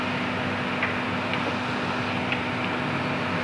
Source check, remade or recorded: recorded